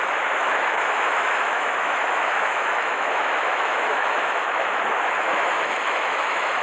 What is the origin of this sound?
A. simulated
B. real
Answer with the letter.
A